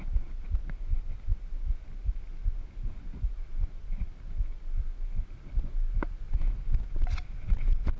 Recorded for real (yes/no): yes